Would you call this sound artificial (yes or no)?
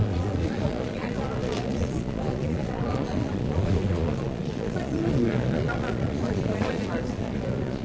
yes